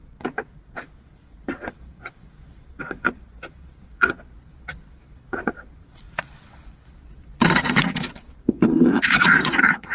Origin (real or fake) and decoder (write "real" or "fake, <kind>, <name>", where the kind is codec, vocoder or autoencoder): fake, vocoder, Vocos